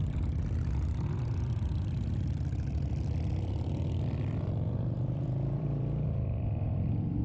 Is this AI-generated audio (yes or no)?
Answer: yes